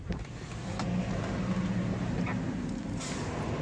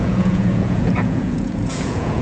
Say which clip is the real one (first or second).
first